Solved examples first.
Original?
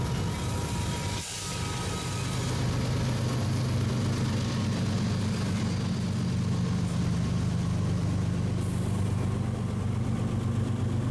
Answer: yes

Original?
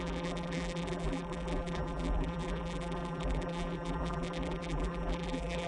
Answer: no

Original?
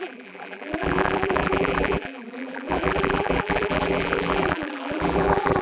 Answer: no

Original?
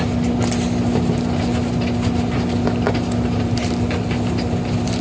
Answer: yes